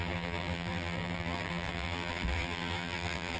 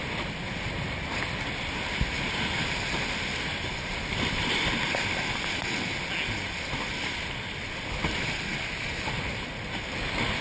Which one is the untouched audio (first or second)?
second